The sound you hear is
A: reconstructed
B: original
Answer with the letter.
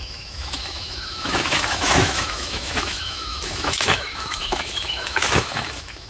A